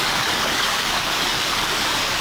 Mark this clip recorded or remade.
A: remade